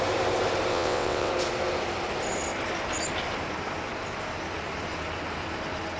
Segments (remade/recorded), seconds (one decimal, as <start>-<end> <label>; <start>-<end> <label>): 0.0-0.7 recorded; 0.7-1.3 remade; 1.3-6.0 recorded